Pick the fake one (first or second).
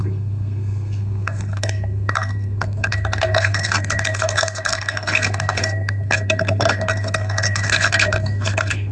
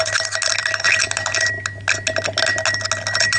first